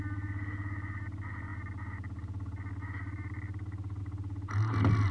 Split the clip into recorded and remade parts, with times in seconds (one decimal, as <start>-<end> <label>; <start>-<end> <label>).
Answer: 0.0-5.1 recorded